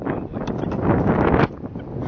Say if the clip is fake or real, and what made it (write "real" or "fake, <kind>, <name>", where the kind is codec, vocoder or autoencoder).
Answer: real